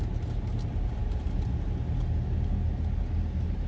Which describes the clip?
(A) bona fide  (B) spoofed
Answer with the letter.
A